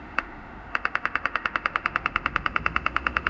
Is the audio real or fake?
fake